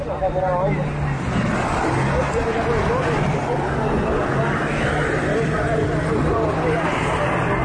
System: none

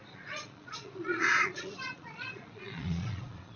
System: vocoder, Vocos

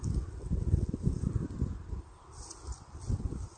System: none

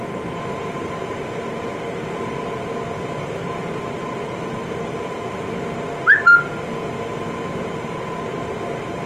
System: none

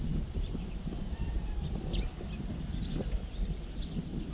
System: none